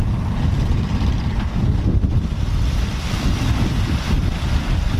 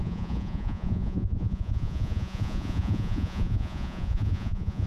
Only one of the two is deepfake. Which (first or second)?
second